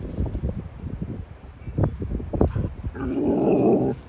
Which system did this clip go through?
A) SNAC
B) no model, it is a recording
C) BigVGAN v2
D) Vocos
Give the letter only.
C